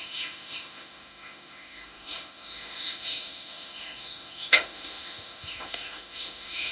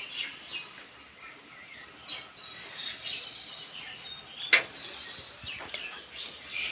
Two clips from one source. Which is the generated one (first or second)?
first